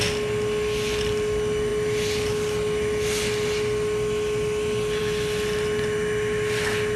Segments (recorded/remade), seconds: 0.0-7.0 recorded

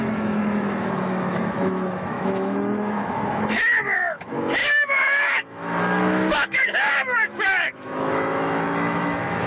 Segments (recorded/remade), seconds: 0.0-9.5 remade